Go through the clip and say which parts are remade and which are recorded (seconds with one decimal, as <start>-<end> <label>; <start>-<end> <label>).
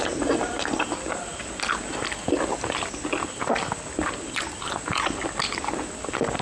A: 0.0-6.4 recorded